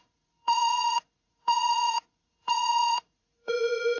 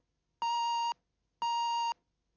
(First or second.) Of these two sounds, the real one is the second